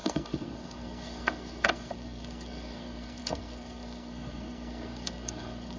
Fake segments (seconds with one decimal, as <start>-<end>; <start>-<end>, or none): 0.0-5.8